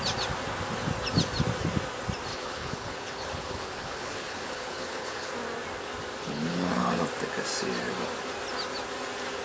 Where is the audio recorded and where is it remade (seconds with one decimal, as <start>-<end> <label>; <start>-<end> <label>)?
0.0-2.3 recorded; 2.3-5.3 remade; 5.3-6.2 recorded; 6.2-7.0 remade; 7.0-9.4 recorded